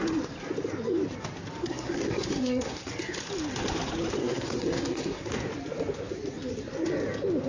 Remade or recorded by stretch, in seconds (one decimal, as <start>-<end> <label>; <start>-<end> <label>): 0.0-1.6 recorded; 1.6-2.8 remade; 2.8-4.2 recorded; 4.2-5.3 remade; 5.3-7.5 recorded